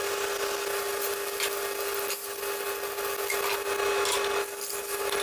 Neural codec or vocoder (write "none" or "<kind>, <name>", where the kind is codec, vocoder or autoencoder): none